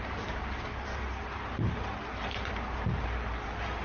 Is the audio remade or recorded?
remade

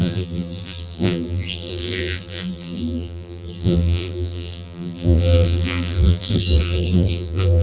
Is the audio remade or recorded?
remade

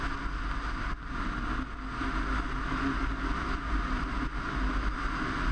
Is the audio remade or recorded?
recorded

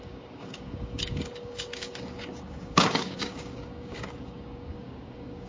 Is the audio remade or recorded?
remade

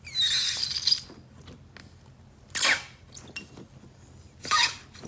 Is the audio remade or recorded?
recorded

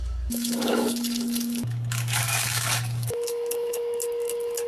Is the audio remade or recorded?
remade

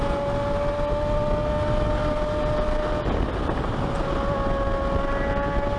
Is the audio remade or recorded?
recorded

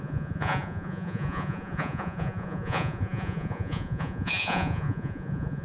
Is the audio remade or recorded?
remade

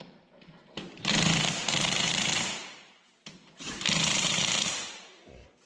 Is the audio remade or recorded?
remade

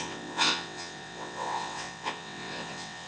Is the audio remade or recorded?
remade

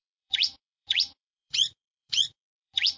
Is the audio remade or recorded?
remade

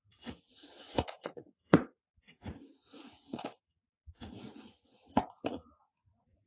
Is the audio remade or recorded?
remade